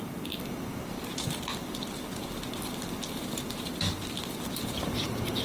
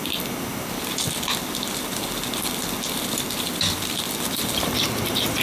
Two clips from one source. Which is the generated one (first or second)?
first